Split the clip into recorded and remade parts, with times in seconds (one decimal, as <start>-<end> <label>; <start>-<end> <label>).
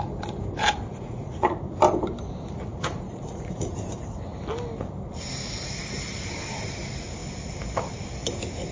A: 0.0-0.9 recorded; 0.9-1.7 remade; 1.7-2.7 recorded; 2.7-3.7 remade; 3.7-8.7 recorded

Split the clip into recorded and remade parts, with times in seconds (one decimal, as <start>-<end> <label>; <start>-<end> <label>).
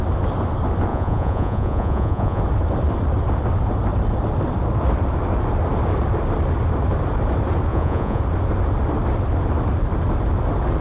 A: 0.0-0.9 recorded; 0.9-2.4 remade; 2.4-7.7 recorded; 7.7-8.2 remade; 8.2-10.8 recorded